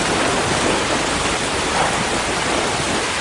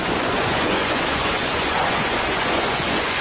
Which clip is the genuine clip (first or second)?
first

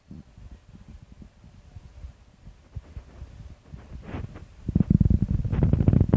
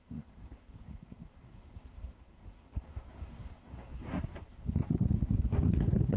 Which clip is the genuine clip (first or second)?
first